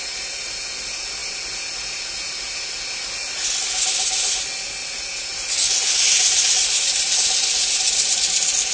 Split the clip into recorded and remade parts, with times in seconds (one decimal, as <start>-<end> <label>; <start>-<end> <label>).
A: 0.0-8.7 recorded